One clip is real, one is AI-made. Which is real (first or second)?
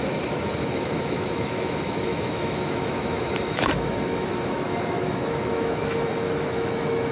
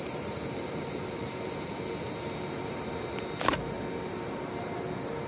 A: second